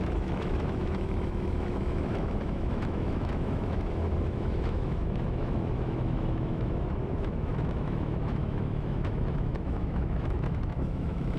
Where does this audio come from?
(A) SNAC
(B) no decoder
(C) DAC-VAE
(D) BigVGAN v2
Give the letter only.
C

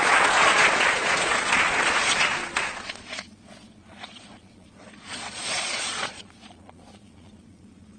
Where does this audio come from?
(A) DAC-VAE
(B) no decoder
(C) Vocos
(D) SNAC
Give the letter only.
C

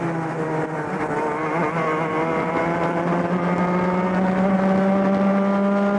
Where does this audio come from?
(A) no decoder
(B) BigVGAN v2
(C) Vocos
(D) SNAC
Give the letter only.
A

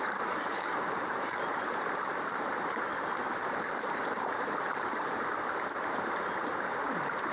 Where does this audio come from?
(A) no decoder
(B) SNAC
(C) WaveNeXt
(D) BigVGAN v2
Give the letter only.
D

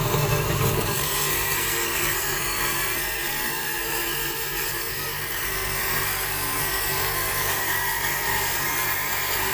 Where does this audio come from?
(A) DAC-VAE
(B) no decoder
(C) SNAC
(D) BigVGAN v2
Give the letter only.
C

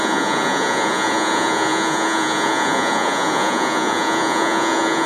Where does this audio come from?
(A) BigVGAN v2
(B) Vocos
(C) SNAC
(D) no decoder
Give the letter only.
B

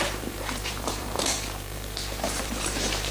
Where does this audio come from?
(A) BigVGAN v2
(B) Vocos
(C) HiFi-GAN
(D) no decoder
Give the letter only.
A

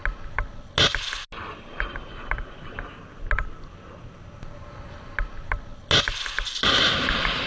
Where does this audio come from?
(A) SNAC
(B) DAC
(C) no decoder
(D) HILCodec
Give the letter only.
C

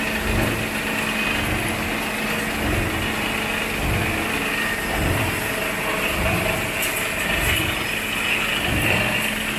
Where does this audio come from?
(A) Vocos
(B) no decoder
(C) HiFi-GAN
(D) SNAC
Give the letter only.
B